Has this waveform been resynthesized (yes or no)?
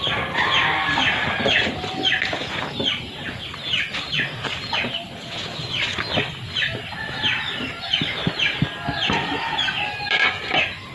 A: no